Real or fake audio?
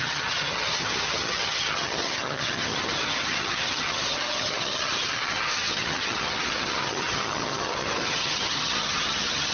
fake